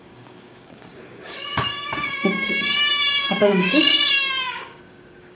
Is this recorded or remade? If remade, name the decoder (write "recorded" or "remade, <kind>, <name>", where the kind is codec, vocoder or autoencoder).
remade, codec, DAC